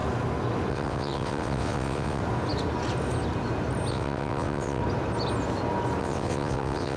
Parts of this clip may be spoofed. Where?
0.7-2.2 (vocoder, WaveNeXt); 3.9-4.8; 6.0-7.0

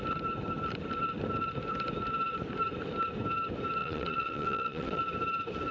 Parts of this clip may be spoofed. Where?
3.8-5.0 (vocoder, WaveNeXt)

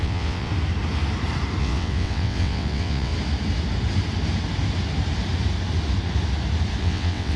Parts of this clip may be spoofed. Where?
0.0-0.5 (vocoder, WaveNeXt); 1.6-3.1; 6.8-7.4

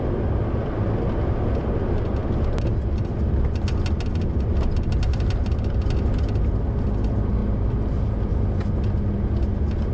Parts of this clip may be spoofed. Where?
none

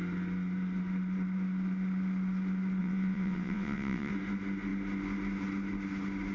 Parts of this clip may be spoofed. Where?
2.8-4.1 (vocoder, WaveNeXt)

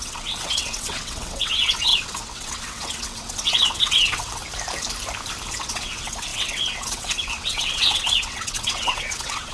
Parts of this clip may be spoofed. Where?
0.0-4.4 (vocoder, WaveNeXt); 5.5-9.5